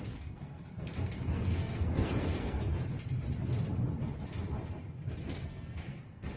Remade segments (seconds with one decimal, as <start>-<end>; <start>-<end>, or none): 0.0-2.7; 5.2-6.4